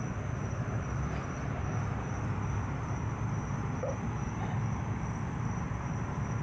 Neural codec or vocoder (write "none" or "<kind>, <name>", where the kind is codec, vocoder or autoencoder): none